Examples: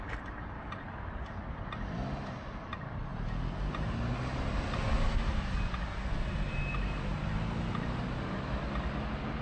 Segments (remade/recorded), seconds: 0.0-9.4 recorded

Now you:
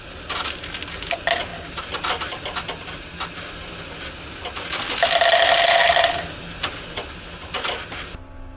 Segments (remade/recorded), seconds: 0.0-8.6 recorded

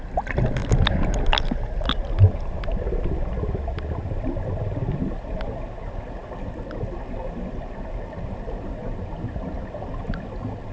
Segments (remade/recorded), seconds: 0.0-10.7 recorded

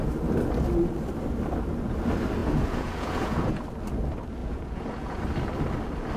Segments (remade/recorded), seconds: 0.0-2.4 recorded; 2.4-3.6 remade; 3.6-4.4 recorded; 4.4-5.2 remade; 5.2-6.2 recorded